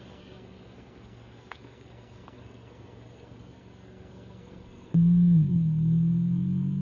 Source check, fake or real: fake